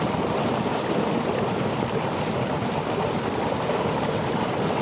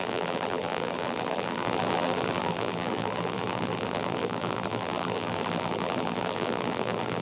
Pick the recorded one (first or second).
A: first